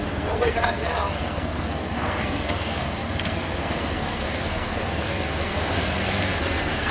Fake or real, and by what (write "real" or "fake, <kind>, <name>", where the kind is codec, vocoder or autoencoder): fake, codec, SNAC